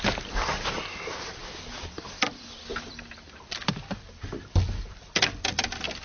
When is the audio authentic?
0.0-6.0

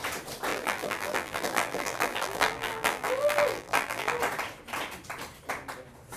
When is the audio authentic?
0.0-0.5; 4.2-6.2

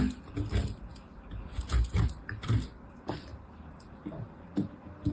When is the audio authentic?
0.0-5.1

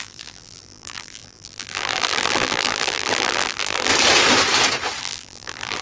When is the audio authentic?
3.9-5.0

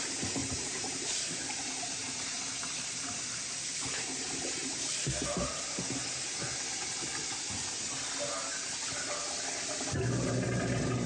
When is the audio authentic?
0.0-0.4; 5.6-11.1

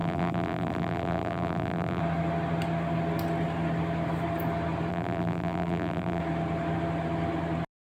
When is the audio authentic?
2.0-4.9; 6.2-7.9

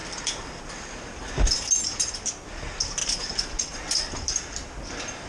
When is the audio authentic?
0.0-5.3